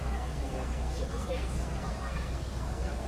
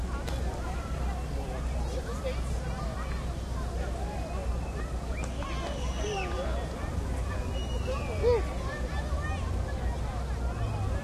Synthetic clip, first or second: first